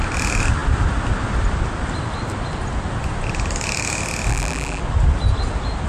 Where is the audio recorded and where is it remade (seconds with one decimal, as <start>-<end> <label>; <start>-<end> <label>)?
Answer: 0.0-4.3 recorded; 4.3-4.8 remade; 4.8-5.9 recorded